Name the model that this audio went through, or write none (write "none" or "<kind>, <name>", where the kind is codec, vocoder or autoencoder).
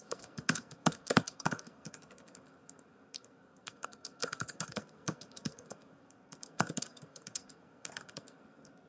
codec, SNAC